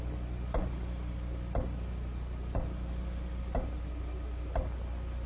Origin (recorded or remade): recorded